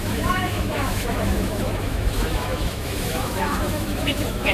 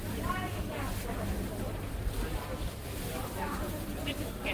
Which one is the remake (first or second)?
first